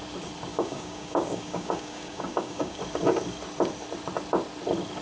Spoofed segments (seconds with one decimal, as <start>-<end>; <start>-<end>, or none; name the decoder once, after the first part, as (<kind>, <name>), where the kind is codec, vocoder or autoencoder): 0.5-2.8 (codec, DAC)